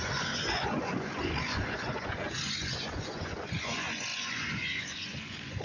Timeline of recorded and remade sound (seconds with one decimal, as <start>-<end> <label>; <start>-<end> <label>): 0.0-5.6 remade